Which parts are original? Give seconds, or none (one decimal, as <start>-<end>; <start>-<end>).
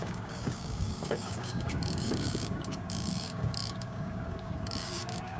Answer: none